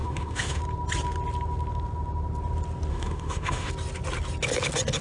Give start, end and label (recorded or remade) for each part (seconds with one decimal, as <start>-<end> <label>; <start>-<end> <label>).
0.0-0.6 remade; 0.6-2.9 recorded; 2.9-3.7 remade; 3.7-5.0 recorded